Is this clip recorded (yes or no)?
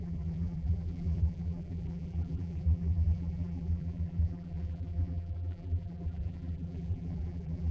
no